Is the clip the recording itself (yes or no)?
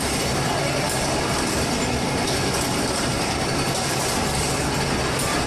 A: yes